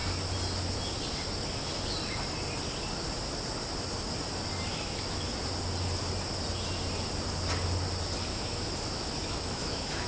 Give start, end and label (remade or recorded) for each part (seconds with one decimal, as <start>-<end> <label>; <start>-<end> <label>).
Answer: 0.0-4.7 recorded; 4.7-5.3 remade; 5.3-8.3 recorded; 8.3-10.1 remade